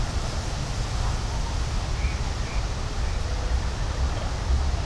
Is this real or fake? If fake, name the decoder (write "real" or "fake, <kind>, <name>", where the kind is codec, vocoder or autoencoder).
real